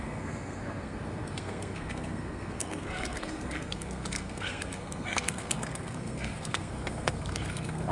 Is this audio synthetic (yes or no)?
yes